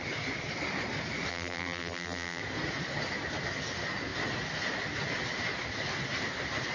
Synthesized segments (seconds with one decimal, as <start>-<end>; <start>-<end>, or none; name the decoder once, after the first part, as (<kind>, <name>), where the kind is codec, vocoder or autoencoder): 1.3-2.4 (vocoder, BigVGAN v2)